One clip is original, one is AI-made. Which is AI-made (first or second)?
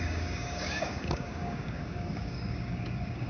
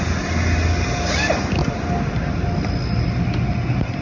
first